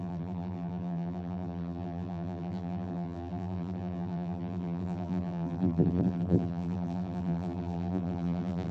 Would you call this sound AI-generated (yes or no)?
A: yes